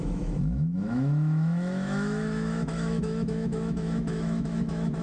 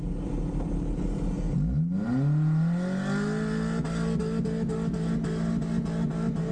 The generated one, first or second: first